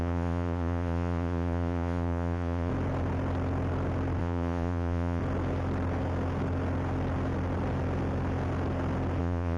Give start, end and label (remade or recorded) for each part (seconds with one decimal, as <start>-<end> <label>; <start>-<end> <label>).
0.0-2.7 remade; 2.7-4.2 recorded; 4.2-5.2 remade; 5.2-9.2 recorded; 9.2-9.6 remade